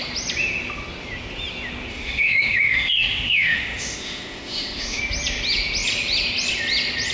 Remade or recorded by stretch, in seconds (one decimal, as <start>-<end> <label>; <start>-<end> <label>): 0.0-1.9 recorded; 1.9-5.0 remade; 5.0-7.1 recorded